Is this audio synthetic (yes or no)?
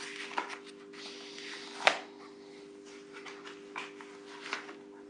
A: no